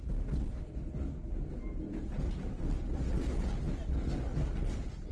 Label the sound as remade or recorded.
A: recorded